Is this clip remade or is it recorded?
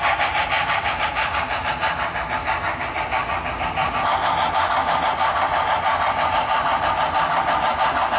recorded